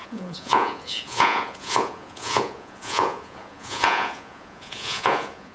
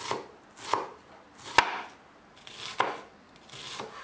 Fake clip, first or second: first